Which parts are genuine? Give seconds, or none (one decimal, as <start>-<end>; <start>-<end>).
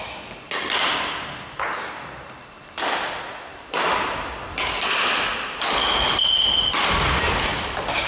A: 0.0-8.1